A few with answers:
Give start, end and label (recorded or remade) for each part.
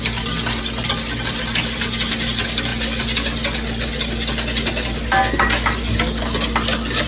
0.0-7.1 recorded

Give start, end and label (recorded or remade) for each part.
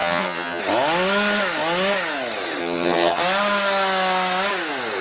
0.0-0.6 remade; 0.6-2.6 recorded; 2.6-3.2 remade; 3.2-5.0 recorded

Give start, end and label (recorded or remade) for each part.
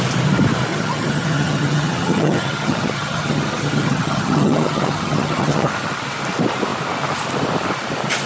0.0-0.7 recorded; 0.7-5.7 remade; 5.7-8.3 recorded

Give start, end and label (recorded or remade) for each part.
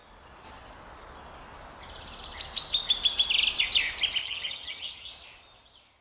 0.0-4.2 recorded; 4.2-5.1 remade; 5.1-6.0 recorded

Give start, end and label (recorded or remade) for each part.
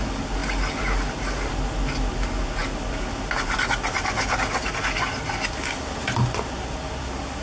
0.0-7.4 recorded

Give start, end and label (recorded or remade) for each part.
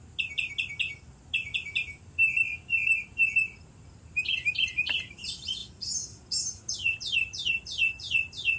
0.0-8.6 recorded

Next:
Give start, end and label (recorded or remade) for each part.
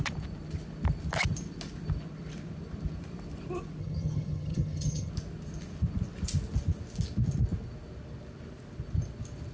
0.0-3.8 recorded; 3.8-5.1 remade; 5.1-9.5 recorded